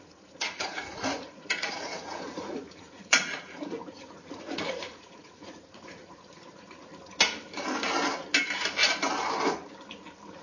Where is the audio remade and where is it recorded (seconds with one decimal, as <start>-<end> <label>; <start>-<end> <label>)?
0.0-6.9 remade; 6.9-10.4 recorded